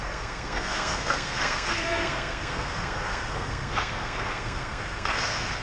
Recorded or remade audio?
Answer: remade